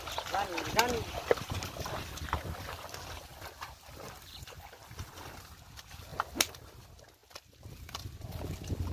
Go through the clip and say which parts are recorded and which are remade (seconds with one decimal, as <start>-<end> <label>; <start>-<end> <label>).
0.0-3.3 recorded; 3.3-5.4 remade; 5.4-6.1 recorded; 6.1-6.7 remade; 6.7-8.9 recorded